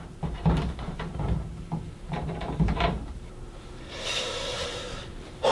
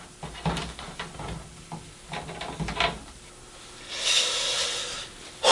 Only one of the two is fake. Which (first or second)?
first